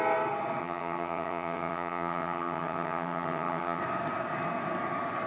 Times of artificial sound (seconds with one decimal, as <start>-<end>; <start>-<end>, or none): 0.6-3.8